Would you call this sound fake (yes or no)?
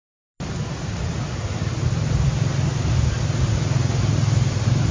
no